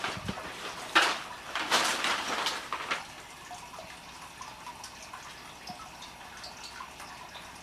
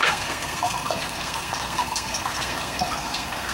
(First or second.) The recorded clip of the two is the first